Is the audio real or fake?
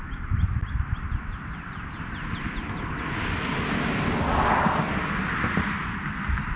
real